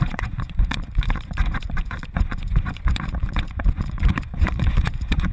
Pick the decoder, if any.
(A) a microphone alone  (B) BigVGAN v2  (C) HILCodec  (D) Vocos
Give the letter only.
D